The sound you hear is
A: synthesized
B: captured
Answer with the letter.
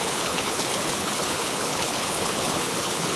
A